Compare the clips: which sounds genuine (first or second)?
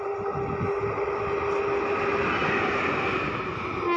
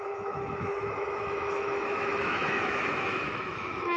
first